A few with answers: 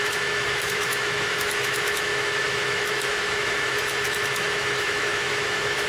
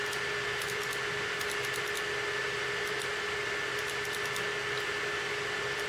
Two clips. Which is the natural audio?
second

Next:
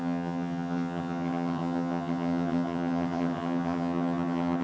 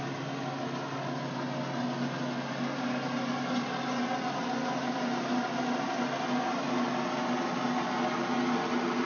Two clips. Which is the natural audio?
second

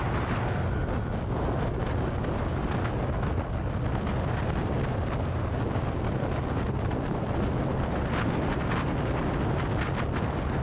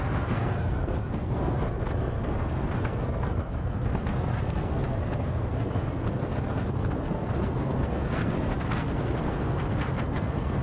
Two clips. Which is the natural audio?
first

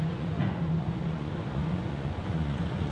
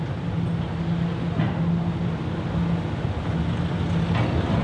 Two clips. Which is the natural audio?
second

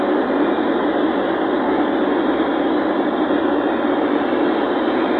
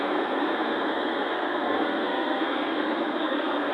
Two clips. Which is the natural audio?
first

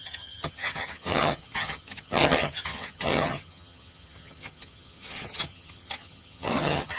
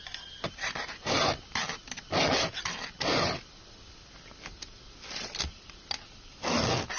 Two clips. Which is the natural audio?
second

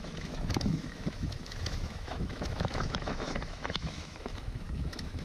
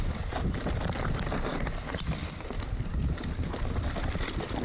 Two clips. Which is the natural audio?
second